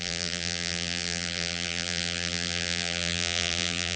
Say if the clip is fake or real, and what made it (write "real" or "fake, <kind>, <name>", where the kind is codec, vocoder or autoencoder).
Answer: fake, vocoder, BigVGAN v2